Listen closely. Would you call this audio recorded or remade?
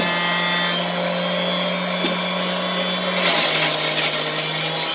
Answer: recorded